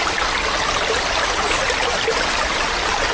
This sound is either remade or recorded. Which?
recorded